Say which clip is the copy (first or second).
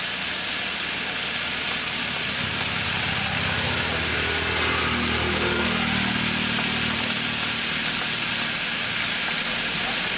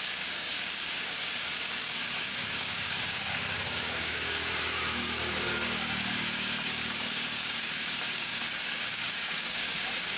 second